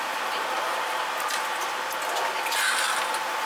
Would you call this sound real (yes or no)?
yes